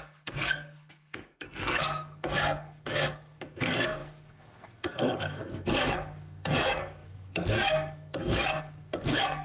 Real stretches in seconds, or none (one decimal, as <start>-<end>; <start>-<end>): none